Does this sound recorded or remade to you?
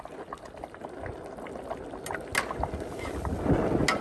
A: recorded